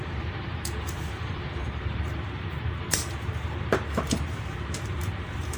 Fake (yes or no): yes